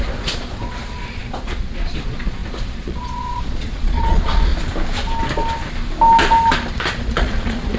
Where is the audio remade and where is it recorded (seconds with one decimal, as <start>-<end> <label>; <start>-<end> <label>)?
0.0-4.5 remade; 4.5-6.7 recorded; 6.7-7.8 remade